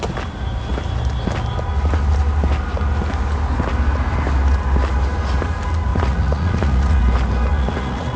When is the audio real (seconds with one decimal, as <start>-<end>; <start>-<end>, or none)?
0.0-5.9; 7.0-7.5